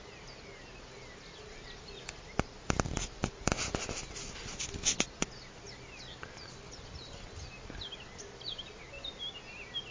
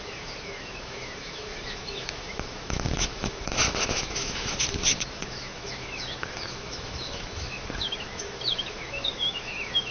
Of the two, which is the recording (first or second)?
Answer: first